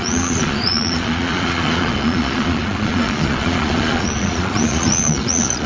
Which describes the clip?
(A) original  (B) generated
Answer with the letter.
B